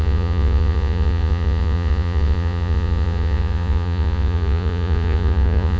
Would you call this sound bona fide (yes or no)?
no